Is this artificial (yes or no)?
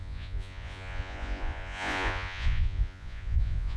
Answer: yes